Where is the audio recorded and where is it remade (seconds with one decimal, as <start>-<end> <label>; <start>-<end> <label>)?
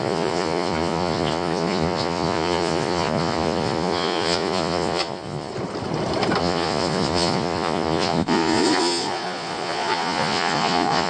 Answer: 0.0-5.5 remade; 5.5-6.4 recorded; 6.4-11.1 remade